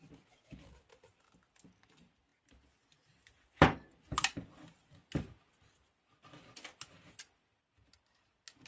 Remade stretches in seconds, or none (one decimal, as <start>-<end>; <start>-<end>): none